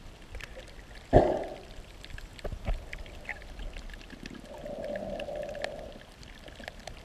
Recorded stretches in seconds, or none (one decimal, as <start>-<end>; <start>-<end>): 2.3-2.9; 3.3-5.3